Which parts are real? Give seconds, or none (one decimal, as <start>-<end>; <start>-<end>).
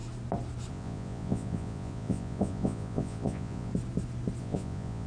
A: 0.0-0.7; 3.7-4.4